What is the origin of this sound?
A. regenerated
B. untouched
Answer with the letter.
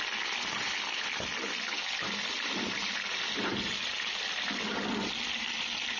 B